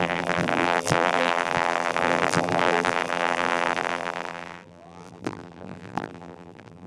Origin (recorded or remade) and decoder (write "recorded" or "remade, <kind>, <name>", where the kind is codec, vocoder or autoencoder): remade, vocoder, BigVGAN v2